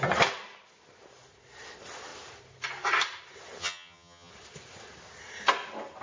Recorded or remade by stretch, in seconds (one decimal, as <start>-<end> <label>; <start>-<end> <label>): 0.0-3.6 recorded; 3.6-4.3 remade; 4.3-6.0 recorded